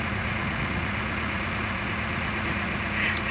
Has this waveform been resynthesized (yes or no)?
yes